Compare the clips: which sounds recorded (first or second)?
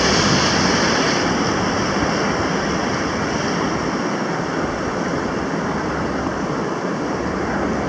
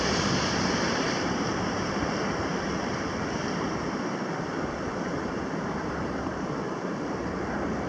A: first